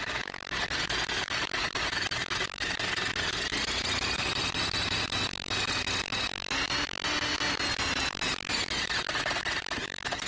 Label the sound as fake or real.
real